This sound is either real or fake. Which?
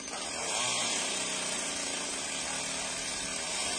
fake